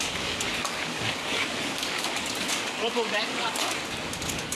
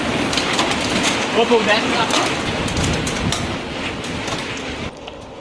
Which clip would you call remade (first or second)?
first